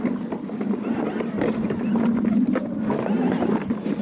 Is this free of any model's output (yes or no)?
yes